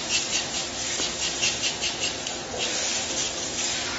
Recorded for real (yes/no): yes